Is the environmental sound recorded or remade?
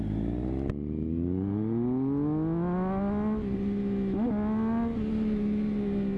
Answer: recorded